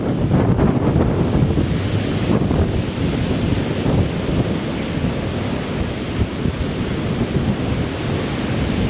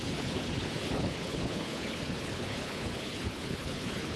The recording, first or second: first